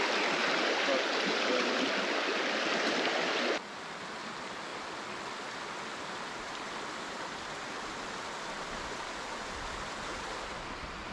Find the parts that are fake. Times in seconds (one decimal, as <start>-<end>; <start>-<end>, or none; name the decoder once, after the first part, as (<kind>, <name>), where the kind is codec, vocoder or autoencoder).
none